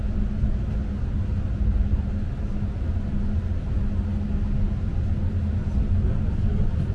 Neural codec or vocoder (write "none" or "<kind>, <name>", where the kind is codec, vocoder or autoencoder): none